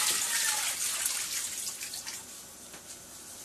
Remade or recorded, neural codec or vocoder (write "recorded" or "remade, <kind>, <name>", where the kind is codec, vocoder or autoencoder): recorded